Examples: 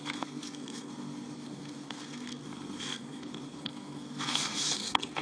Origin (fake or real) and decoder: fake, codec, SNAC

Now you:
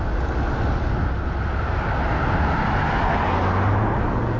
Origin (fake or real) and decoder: real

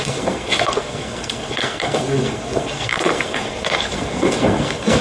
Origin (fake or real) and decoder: fake, codec, SNAC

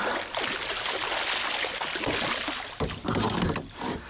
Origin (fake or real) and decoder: real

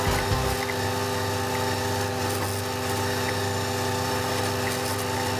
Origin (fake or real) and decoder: real